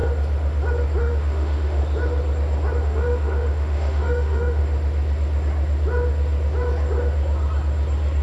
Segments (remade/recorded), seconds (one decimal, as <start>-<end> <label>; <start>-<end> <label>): 0.0-1.0 recorded; 1.0-1.8 remade; 1.8-2.8 recorded; 2.8-4.6 remade; 4.6-8.2 recorded